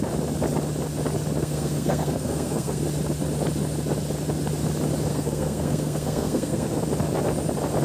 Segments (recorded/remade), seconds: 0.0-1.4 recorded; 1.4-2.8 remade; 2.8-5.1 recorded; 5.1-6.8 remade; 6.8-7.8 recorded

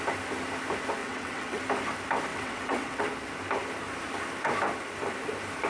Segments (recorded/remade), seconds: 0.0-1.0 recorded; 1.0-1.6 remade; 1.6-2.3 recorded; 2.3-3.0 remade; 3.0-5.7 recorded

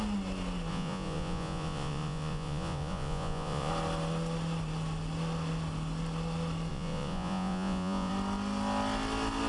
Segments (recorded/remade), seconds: 0.0-0.7 recorded; 0.7-3.7 remade; 3.7-6.7 recorded; 6.7-8.1 remade; 8.1-9.5 recorded